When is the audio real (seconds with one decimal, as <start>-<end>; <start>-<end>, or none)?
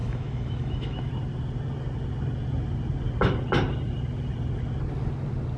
1.1-5.6